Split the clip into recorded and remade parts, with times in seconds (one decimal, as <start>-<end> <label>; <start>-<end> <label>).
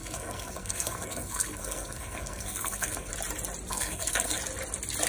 0.0-3.1 remade; 3.1-3.7 recorded; 3.7-4.4 remade; 4.4-5.1 recorded